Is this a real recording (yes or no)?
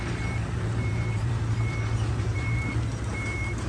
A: no